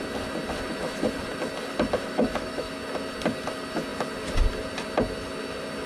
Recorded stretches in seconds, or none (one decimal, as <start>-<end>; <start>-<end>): 0.0-2.0; 2.7-5.9